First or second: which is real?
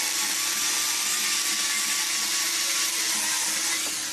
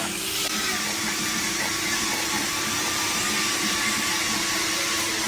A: first